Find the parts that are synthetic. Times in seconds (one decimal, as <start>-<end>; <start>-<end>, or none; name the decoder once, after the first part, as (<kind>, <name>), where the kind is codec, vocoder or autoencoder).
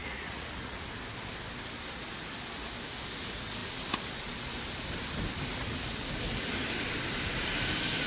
0.0-0.9 (vocoder, Vocos)